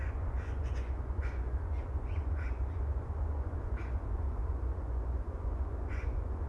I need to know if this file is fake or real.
fake